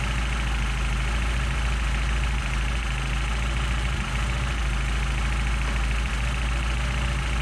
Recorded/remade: recorded